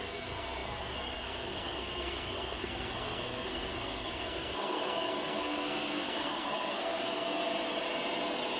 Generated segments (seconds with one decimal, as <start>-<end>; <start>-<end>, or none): 0.0-7.4